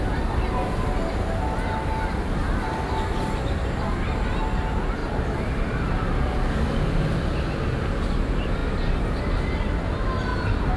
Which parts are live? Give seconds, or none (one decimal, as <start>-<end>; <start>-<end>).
0.0-5.0; 6.7-10.3